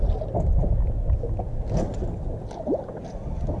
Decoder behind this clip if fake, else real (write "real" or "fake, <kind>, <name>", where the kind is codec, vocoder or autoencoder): real